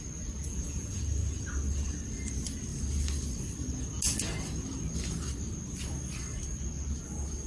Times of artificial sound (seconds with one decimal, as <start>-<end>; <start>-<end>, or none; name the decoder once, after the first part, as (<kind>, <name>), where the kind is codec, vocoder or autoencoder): 0.5-1.0 (vocoder, Vocos)